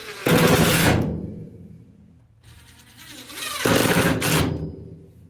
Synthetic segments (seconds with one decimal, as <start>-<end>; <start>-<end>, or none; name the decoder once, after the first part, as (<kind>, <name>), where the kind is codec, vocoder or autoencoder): 0.0-2.6 (vocoder, Vocos)